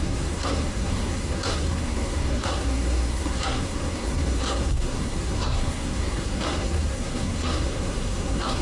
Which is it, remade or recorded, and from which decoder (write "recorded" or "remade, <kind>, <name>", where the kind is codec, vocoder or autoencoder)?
remade, codec, SNAC